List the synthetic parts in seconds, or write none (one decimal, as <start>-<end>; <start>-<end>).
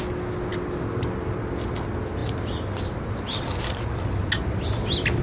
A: none